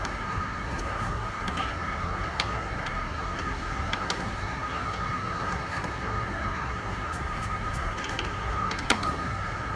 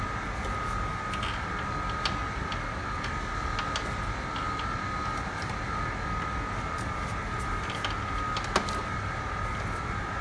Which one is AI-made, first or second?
first